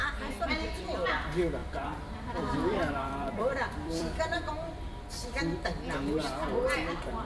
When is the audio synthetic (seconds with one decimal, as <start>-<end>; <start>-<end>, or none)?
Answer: 1.6-4.5